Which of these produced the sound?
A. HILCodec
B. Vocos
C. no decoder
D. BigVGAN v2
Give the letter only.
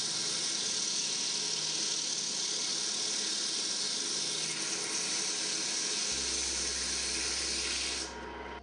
C